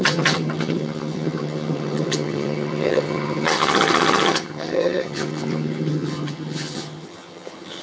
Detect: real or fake fake